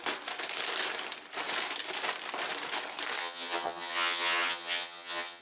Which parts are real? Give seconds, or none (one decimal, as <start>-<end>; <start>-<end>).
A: 0.0-3.2